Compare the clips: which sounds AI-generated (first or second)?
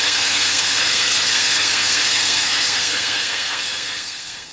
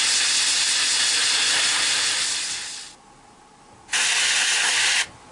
first